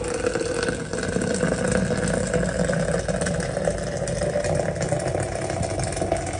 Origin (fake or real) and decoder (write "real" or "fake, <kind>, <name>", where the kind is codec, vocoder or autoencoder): real